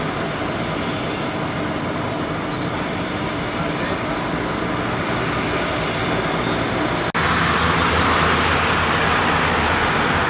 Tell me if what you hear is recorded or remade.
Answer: recorded